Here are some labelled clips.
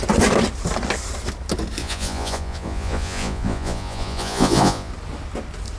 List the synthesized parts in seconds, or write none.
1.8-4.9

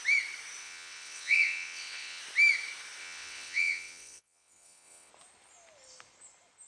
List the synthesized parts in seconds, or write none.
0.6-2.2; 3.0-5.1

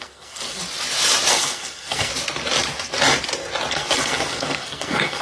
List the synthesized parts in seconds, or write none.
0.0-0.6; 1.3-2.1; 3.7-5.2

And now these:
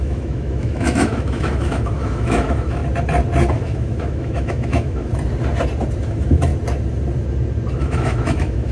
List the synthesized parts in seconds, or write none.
0.0-2.8; 3.5-5.1; 6.0-6.5; 7.7-8.7